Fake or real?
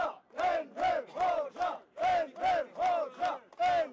real